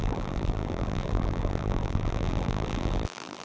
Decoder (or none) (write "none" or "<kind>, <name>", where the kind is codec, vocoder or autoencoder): vocoder, BigVGAN v2